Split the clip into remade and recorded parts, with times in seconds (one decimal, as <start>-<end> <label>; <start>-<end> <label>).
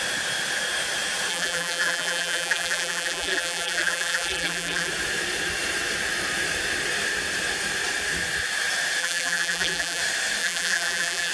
0.0-1.3 recorded; 1.3-4.9 remade; 4.9-9.0 recorded; 9.0-10.0 remade; 10.0-10.4 recorded; 10.4-11.3 remade